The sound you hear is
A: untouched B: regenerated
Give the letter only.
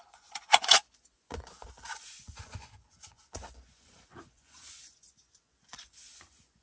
B